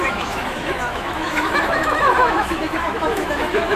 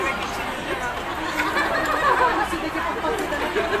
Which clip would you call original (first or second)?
second